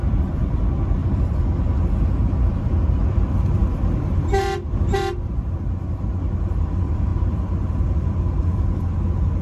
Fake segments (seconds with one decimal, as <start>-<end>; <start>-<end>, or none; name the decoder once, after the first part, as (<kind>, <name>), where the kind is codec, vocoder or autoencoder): 0.0-1.0 (vocoder, BigVGAN v2); 2.6-9.4